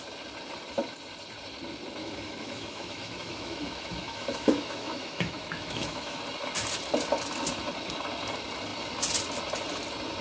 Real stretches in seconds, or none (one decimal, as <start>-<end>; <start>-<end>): 0.0-2.0; 6.2-10.2